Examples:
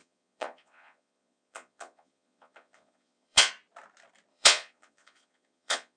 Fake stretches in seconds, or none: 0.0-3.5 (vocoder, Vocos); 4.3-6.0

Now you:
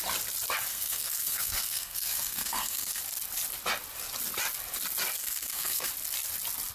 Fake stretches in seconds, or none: 0.7-3.0 (codec, SNAC); 5.2-5.9